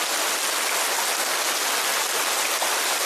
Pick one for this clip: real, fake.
real